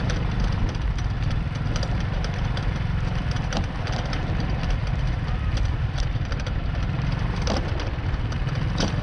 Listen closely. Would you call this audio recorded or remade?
remade